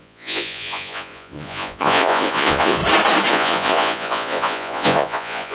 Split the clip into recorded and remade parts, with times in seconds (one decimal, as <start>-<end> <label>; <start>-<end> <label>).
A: 0.0-2.8 remade; 2.8-3.3 recorded; 3.3-5.5 remade